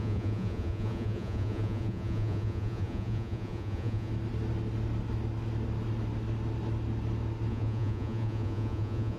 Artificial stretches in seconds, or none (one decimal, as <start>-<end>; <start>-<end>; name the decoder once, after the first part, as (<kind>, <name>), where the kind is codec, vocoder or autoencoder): 0.0-4.1 (vocoder, Vocos); 7.5-9.2